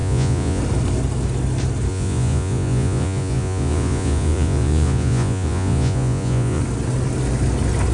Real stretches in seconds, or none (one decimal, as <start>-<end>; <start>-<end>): 0.6-1.9; 6.6-7.9